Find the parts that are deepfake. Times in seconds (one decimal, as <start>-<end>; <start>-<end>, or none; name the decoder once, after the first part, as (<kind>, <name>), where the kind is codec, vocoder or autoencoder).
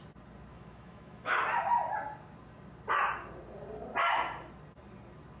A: 0.5-1.4 (autoencoder, DAC-VAE)